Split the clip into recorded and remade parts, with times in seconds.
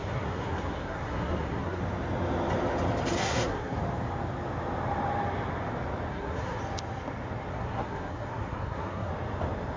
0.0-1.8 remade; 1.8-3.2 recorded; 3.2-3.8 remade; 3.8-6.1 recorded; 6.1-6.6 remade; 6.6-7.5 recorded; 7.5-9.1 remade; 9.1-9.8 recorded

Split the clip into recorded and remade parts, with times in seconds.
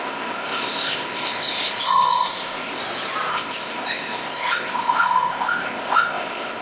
0.0-2.8 remade; 2.8-3.3 recorded; 3.3-6.6 remade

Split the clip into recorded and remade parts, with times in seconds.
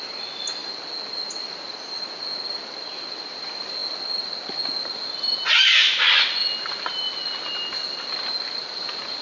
0.0-9.2 recorded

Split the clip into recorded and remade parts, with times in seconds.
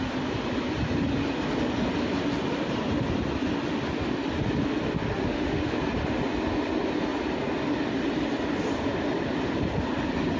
0.0-5.3 recorded; 5.3-5.8 remade; 5.8-10.4 recorded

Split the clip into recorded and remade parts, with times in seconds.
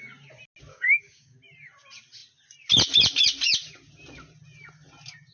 0.0-0.7 recorded; 0.7-1.4 remade; 1.4-5.3 recorded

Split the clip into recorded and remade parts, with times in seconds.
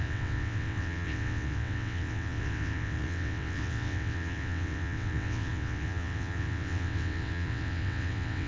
0.0-8.5 remade